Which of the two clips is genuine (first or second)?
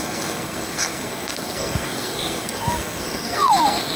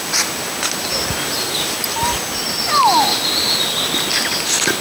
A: second